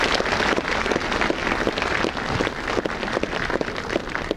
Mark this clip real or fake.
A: real